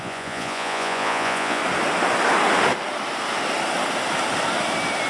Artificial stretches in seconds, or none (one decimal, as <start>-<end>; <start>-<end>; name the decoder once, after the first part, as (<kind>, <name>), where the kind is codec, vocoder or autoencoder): 0.0-1.6 (vocoder, Vocos)